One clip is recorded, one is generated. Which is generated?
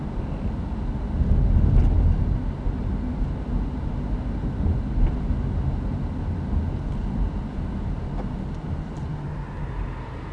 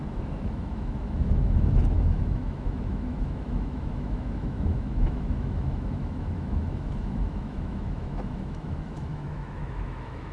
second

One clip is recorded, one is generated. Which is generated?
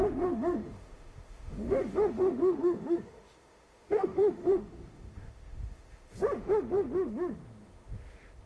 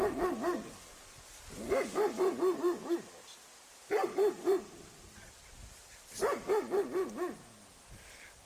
first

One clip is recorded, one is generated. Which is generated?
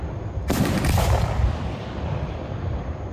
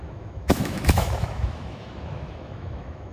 second